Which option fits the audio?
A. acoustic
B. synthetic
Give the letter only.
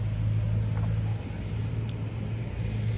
A